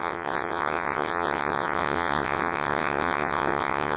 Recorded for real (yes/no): no